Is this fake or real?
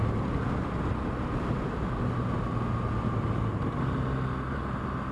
real